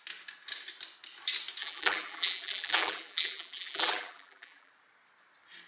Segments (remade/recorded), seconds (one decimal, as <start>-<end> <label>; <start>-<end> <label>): 0.0-1.6 recorded; 1.6-4.7 remade; 4.7-5.7 recorded